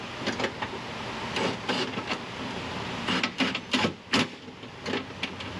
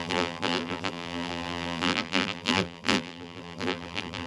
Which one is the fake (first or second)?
second